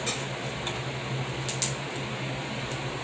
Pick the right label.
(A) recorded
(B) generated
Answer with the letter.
A